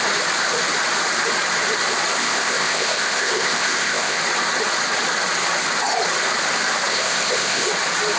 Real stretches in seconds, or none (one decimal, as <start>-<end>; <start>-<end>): 0.0-2.1; 4.2-6.9; 7.7-8.2